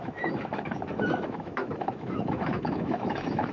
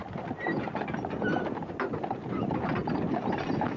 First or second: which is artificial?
first